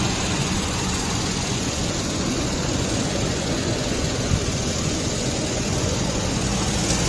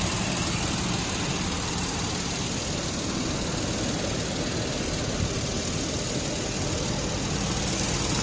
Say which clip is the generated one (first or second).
first